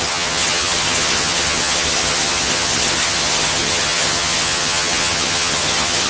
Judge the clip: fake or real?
fake